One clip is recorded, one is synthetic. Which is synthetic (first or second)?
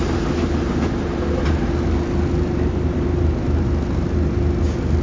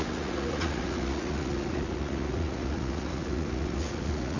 second